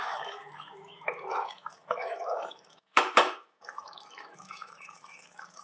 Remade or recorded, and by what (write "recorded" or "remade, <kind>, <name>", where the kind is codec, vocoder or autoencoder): remade, autoencoder, DAC-VAE